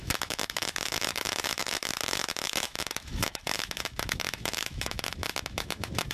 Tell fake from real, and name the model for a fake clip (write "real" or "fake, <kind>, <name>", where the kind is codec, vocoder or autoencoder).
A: fake, autoencoder, DAC-VAE